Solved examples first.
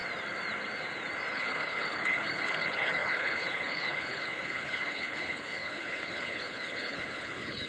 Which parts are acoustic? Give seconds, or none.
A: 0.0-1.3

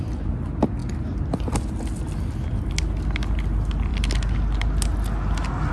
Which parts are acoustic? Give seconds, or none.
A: 0.0-5.7